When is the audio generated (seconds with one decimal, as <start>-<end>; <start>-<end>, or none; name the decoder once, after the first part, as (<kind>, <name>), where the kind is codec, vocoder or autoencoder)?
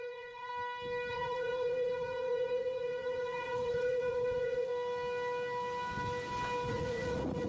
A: 0.0-0.5 (vocoder, Vocos); 1.1-4.7; 6.7-7.5